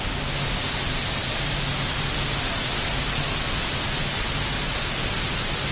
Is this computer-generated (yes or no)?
no